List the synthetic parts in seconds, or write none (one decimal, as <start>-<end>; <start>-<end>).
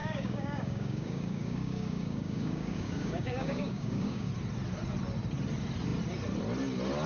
0.0-4.3